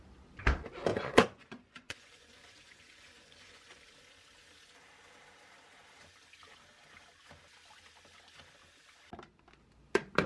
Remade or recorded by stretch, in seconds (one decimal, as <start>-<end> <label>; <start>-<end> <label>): 0.0-0.9 recorded; 0.9-3.8 remade; 3.8-10.3 recorded